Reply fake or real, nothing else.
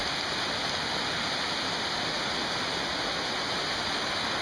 real